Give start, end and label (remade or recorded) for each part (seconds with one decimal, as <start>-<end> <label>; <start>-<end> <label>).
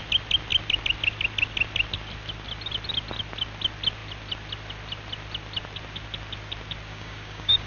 0.0-6.9 recorded; 6.9-7.7 remade